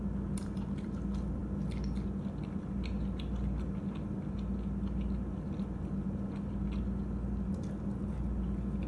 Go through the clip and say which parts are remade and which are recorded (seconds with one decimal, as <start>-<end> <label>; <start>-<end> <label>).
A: 0.0-8.9 recorded